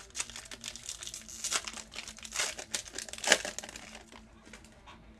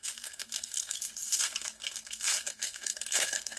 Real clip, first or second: first